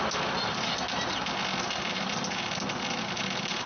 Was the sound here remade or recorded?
recorded